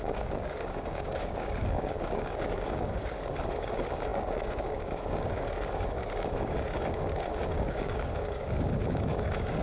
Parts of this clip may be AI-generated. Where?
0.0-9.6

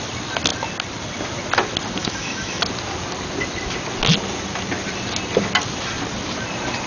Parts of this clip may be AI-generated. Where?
2.0-2.6

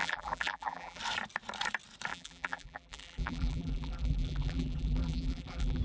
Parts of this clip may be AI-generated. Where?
0.0-1.0; 2.1-5.8